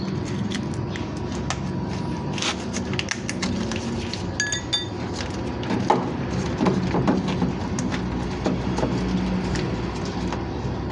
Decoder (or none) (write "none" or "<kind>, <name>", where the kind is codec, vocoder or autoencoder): none